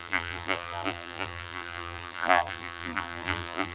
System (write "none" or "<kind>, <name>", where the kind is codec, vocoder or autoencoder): vocoder, BigVGAN v2